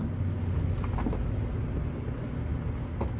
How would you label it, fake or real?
real